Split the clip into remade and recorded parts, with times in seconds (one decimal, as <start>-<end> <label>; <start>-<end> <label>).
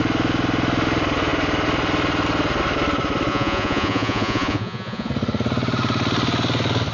0.0-3.3 recorded; 3.3-5.1 remade; 5.1-6.9 recorded